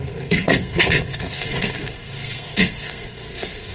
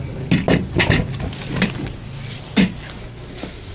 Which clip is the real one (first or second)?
second